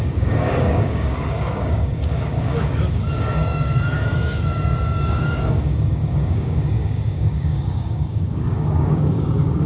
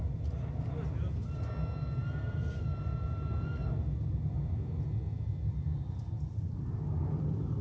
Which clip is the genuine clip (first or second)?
second